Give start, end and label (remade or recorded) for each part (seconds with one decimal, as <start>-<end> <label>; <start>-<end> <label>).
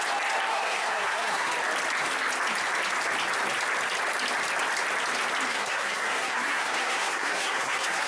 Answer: 0.0-0.5 recorded; 0.5-1.5 remade; 1.5-5.5 recorded; 5.5-8.1 remade